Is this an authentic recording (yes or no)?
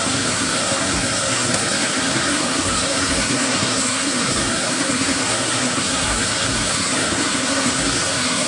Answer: no